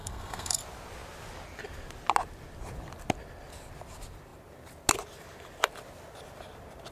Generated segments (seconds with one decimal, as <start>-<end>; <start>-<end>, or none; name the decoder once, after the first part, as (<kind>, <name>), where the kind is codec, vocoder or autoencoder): 0.0-0.6 (codec, SNAC)